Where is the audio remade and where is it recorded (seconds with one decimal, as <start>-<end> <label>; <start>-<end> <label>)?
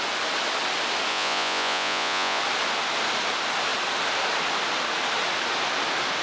0.0-1.1 recorded; 1.1-2.4 remade; 2.4-6.2 recorded